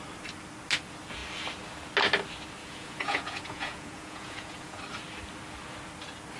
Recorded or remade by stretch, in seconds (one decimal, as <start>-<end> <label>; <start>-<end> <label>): 0.0-2.6 recorded; 2.6-4.8 remade; 4.8-6.4 recorded